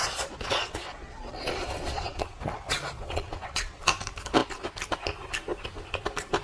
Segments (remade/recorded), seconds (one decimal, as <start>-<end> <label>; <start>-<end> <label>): 0.0-3.8 remade; 3.8-6.4 recorded